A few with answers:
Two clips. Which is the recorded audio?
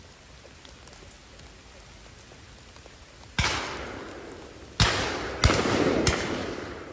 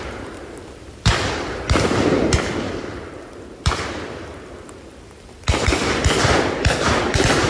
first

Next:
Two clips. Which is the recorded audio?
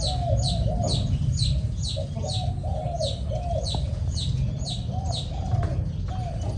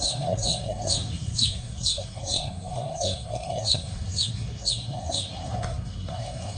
first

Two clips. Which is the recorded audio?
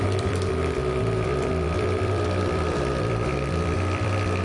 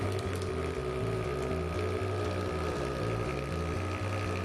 second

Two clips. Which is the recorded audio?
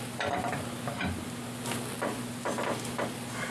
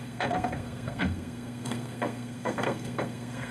first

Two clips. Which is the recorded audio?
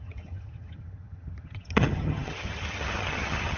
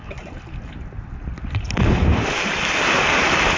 second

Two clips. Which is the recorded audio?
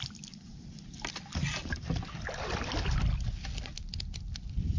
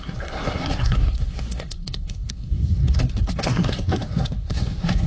first